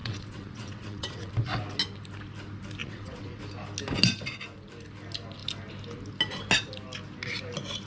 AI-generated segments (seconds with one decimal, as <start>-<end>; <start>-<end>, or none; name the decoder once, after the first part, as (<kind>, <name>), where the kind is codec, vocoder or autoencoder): 0.0-1.3 (vocoder, WaveNeXt); 2.8-3.4